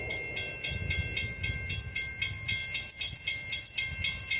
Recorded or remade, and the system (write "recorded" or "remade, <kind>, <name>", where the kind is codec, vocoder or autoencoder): recorded